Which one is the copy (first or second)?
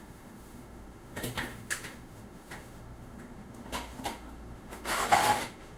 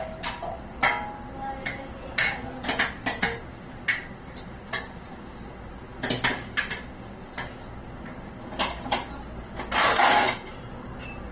first